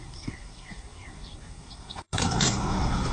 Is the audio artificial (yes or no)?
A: yes